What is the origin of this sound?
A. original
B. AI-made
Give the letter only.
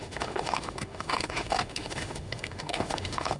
B